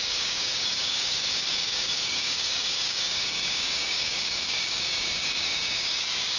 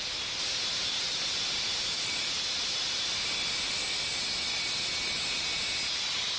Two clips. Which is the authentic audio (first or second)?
second